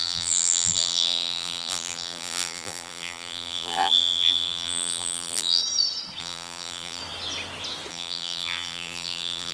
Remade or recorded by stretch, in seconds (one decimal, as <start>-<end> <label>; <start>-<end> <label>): 0.0-5.6 remade; 5.6-6.2 recorded; 6.2-7.0 remade; 7.0-7.9 recorded; 7.9-9.5 remade